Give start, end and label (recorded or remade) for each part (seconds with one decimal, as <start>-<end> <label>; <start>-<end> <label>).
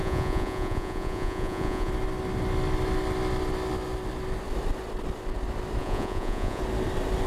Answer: 0.0-1.9 remade; 1.9-5.8 recorded; 5.8-6.6 remade; 6.6-7.3 recorded